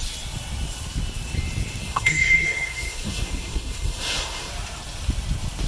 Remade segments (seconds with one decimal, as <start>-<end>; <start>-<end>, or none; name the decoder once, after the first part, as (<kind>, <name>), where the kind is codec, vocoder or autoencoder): 1.8-4.5 (codec, SNAC)